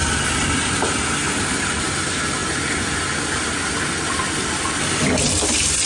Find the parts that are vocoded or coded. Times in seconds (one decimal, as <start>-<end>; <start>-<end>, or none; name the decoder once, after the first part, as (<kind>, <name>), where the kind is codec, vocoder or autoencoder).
none